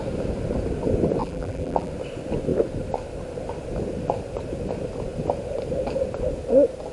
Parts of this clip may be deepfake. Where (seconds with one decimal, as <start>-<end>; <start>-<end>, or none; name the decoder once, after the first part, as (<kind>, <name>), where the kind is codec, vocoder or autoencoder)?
1.2-1.9 (vocoder, BigVGAN v2)